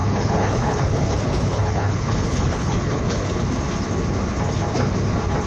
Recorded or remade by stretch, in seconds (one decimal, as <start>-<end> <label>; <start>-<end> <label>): 0.0-3.3 remade; 3.3-5.5 recorded